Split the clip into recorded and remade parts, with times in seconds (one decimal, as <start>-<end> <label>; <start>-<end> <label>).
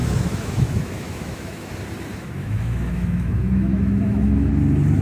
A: 0.0-1.7 remade; 1.7-2.1 recorded; 2.1-4.5 remade; 4.5-5.0 recorded